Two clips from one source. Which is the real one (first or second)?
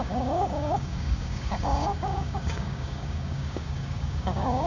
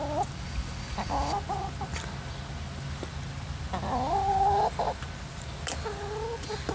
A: second